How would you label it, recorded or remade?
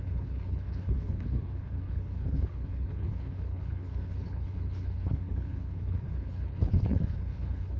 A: remade